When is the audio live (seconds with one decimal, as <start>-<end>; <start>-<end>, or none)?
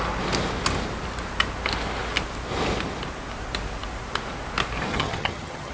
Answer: 0.0-4.9